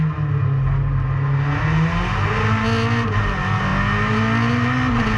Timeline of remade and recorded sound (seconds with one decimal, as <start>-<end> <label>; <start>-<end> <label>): 0.0-5.2 recorded